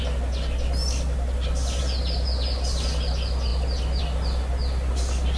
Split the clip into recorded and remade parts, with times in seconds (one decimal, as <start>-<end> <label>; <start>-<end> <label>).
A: 0.0-5.4 recorded